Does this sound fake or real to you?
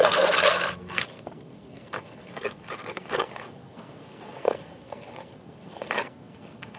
fake